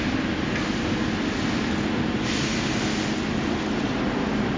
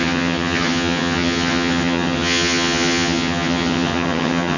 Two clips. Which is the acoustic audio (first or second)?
first